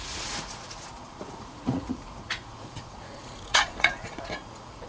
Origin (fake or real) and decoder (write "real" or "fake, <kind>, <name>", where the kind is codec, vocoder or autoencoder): fake, vocoder, Vocos